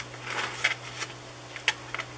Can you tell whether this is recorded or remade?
recorded